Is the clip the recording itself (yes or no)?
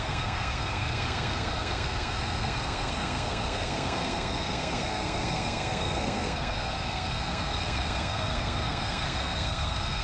no